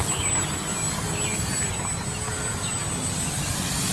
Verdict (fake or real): real